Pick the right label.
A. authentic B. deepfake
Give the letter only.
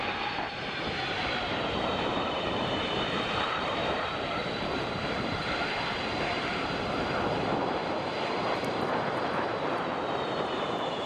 B